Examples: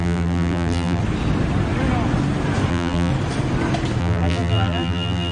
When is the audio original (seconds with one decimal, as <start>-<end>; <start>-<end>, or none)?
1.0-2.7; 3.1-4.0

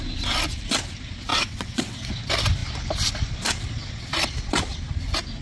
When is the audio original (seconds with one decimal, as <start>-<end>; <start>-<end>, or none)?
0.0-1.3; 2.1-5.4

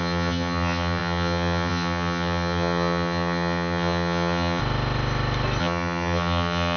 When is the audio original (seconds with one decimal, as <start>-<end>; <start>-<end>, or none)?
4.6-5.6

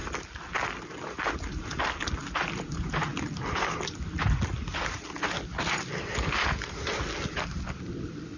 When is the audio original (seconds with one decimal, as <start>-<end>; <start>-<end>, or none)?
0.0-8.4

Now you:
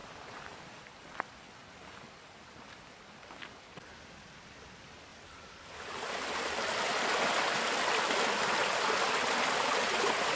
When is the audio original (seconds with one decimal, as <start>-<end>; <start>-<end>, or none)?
1.0-5.1; 6.9-10.4

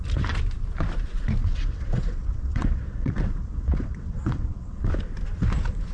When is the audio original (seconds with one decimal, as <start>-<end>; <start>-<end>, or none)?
0.0-1.4; 4.9-5.9

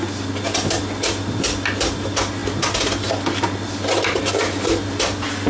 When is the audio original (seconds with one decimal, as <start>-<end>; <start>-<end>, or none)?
0.0-5.5

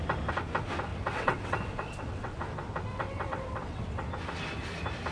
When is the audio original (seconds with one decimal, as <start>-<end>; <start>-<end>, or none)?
0.0-0.9; 2.4-2.9; 4.1-5.1